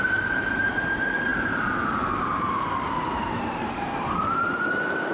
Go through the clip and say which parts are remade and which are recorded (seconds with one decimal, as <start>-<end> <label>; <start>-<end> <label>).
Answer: 0.0-5.1 remade